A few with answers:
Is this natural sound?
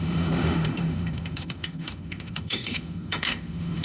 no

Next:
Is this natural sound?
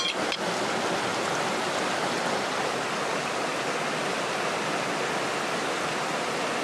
yes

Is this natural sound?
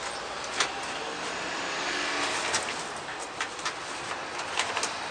yes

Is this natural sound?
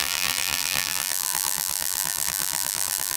no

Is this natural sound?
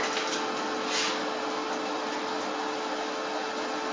yes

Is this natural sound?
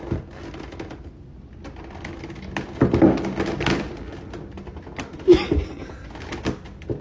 yes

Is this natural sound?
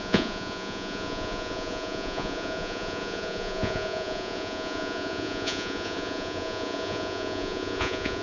no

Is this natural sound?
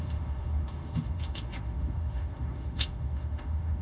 no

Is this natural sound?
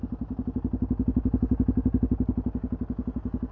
yes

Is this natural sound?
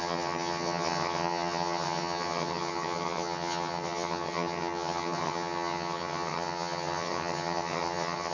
no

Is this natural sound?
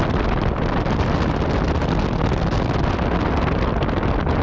yes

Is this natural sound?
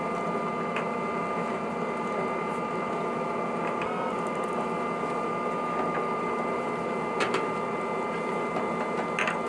yes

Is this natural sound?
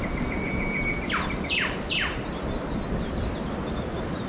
yes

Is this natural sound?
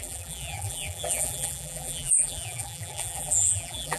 no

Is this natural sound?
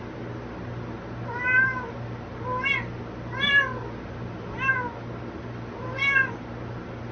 yes